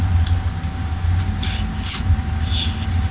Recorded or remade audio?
recorded